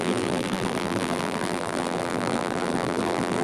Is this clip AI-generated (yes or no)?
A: yes